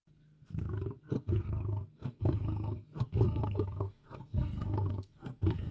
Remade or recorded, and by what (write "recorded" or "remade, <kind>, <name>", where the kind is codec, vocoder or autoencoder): remade, codec, SNAC